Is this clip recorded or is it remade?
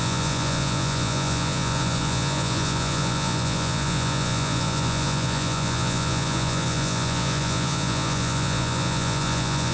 remade